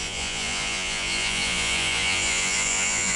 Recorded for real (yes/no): no